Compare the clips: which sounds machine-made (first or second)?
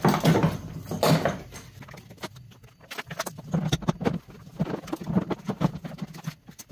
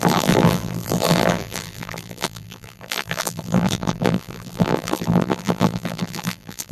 second